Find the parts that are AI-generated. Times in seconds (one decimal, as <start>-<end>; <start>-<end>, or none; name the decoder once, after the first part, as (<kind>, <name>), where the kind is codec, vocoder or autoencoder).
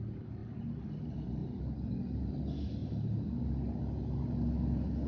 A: 1.4-2.3 (vocoder, BigVGAN v2); 2.8-3.4